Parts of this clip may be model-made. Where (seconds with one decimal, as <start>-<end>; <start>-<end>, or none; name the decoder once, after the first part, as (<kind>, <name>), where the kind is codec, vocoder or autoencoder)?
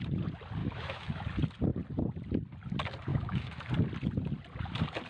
0.6-1.2 (autoencoder, DAC-VAE); 3.1-3.6